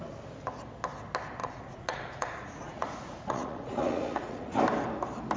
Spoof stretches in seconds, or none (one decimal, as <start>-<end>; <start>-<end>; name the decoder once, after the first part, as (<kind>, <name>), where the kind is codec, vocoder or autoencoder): 1.4-4.6 (vocoder, Vocos)